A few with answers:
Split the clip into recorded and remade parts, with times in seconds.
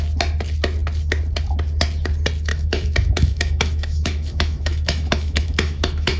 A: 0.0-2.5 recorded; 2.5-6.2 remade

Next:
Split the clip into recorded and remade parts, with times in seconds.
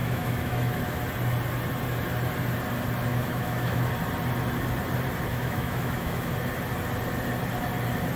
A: 0.0-1.0 remade; 1.0-3.1 recorded; 3.1-3.9 remade; 3.9-5.3 recorded; 5.3-6.3 remade; 6.3-8.2 recorded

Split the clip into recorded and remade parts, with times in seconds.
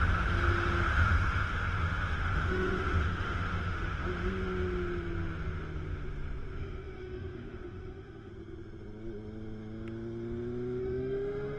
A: 0.0-0.9 recorded; 0.9-4.0 remade; 4.0-6.6 recorded; 6.6-8.3 remade; 8.3-10.8 recorded; 10.8-11.6 remade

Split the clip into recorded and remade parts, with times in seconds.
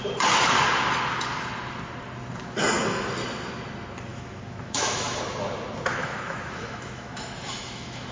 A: 0.0-4.1 recorded; 4.1-5.2 remade; 5.2-6.0 recorded; 6.0-8.1 remade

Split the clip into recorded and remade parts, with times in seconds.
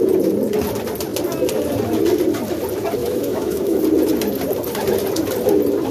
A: 0.0-3.0 recorded; 3.0-3.8 remade; 3.8-5.9 recorded